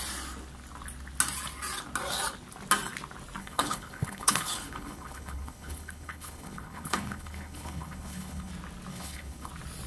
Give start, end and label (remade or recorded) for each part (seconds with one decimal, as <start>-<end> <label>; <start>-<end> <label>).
0.0-3.4 recorded; 3.4-8.5 remade; 8.5-8.9 recorded; 8.9-9.5 remade; 9.5-9.9 recorded